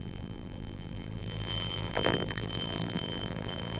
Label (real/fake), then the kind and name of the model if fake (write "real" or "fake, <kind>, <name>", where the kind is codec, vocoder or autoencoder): fake, vocoder, BigVGAN v2